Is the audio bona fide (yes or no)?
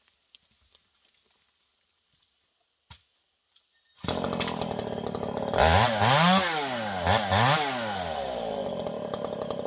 yes